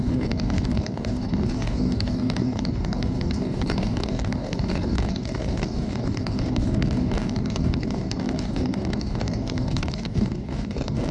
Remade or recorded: remade